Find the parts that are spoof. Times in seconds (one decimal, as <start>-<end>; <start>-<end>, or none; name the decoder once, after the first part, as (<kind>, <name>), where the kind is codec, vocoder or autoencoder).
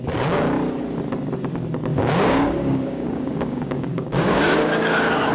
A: 1.9-5.3 (codec, DAC)